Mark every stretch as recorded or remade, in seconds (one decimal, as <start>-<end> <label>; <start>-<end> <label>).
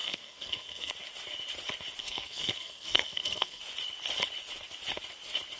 0.0-0.9 remade; 0.9-2.0 recorded; 2.0-3.6 remade; 3.6-5.6 recorded